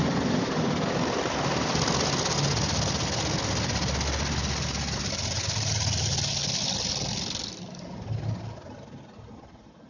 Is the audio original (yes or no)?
yes